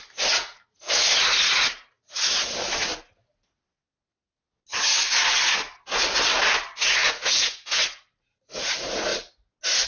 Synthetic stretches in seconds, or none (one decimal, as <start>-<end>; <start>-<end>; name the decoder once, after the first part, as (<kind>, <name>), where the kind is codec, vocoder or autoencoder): 7.0-7.8 (vocoder, Vocos)